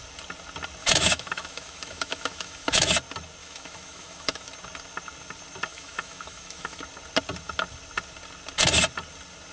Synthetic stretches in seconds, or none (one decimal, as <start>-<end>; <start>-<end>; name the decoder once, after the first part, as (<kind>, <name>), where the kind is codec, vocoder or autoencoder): 0.8-2.9 (autoencoder, DAC-VAE); 3.4-4.5; 5.7-6.8